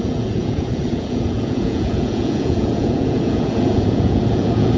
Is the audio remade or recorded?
remade